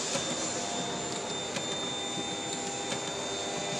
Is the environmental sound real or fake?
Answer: real